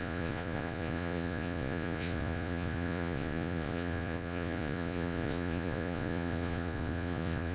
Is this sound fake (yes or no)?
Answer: yes